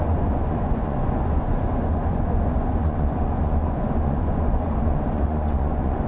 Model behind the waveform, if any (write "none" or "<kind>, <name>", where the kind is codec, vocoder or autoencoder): vocoder, Vocos